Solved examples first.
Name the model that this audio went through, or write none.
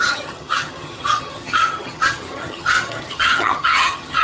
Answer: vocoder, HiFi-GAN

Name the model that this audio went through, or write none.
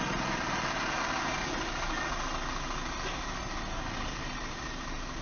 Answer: none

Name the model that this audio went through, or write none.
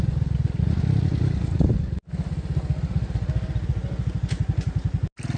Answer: none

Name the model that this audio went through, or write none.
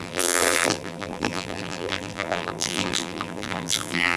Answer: vocoder, BigVGAN v2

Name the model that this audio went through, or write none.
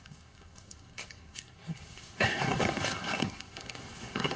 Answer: codec, SNAC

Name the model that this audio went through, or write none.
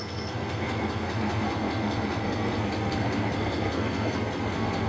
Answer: codec, SNAC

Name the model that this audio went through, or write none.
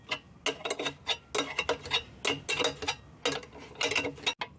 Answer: none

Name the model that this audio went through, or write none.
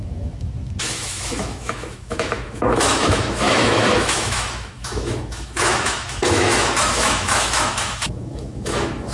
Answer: autoencoder, DAC-VAE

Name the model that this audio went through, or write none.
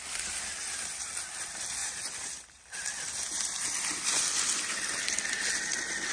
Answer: none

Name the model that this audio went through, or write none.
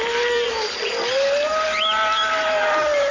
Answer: none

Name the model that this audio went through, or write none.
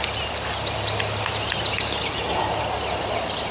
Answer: none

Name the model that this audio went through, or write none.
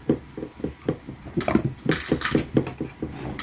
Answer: none